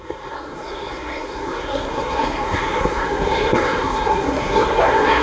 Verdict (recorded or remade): remade